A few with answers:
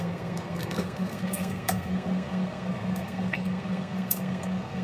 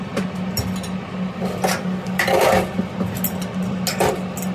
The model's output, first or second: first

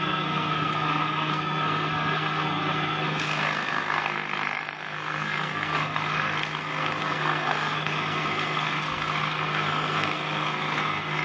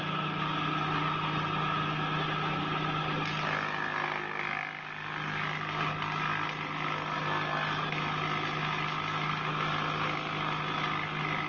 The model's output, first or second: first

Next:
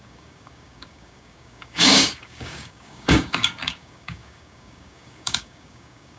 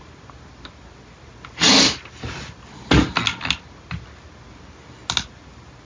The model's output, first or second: first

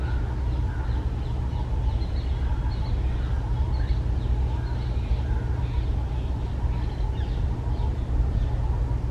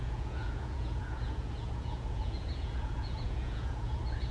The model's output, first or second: second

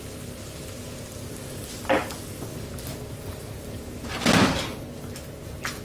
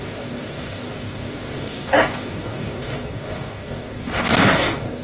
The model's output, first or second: second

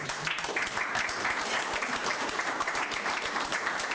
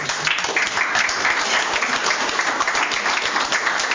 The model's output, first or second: first